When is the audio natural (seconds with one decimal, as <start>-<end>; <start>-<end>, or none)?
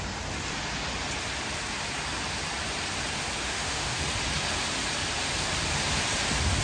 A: 0.0-3.4; 4.0-6.6